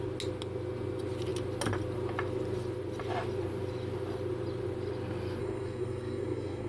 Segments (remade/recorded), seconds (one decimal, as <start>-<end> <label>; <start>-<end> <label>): 0.0-5.4 recorded; 5.4-6.7 remade